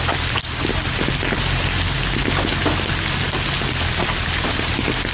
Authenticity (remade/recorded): recorded